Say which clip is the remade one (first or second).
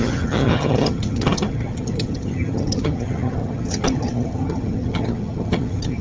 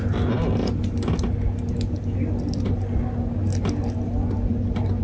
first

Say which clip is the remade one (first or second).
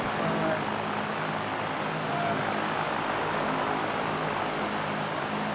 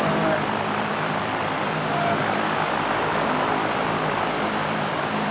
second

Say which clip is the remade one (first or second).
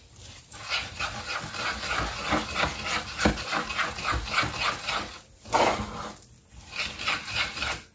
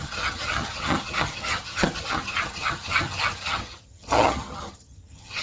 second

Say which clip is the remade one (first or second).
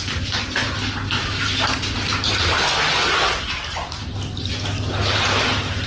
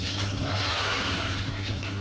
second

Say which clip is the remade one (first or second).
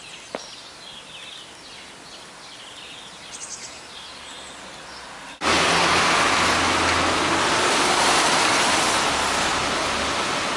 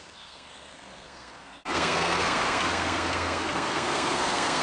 second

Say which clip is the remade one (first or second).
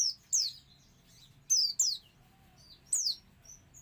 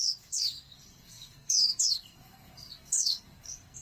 second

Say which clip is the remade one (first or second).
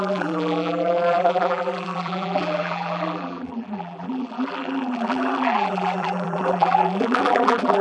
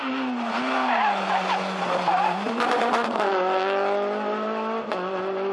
first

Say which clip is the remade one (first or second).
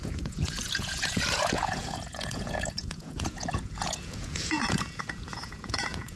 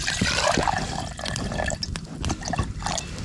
first